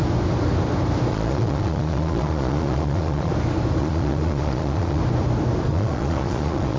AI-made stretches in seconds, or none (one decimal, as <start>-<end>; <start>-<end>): 1.1-3.3; 3.8-5.0; 5.7-6.8